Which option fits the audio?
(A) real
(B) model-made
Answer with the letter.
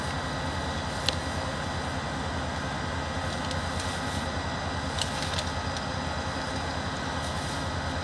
A